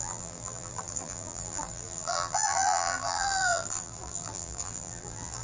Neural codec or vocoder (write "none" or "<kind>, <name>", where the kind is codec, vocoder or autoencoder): vocoder, BigVGAN v2